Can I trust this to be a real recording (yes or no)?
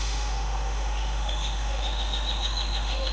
no